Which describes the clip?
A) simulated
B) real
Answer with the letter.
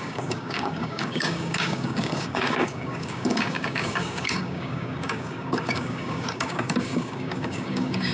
A